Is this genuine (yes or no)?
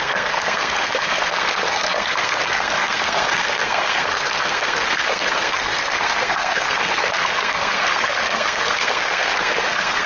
no